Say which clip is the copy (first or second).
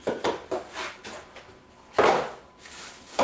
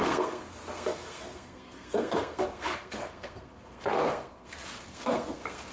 second